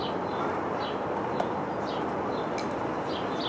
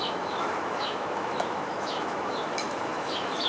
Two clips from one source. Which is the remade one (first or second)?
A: second